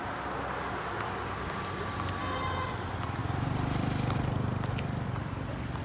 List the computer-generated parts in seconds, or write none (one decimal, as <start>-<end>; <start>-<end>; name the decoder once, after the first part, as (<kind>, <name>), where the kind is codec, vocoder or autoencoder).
3.2-5.3 (vocoder, BigVGAN v2)